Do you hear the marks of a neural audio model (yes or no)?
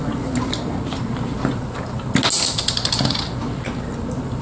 no